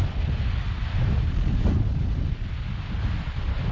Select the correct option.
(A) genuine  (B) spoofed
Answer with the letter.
A